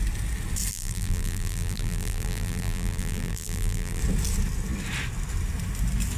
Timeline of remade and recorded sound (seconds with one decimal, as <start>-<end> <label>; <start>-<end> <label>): 0.0-0.7 recorded; 0.7-4.0 remade; 4.0-6.2 recorded